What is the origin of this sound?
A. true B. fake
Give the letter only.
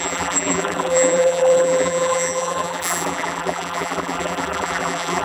B